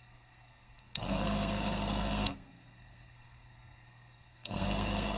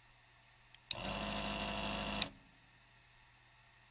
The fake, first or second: first